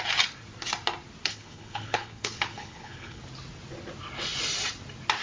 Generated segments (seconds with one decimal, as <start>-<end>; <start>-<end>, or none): 1.2-3.2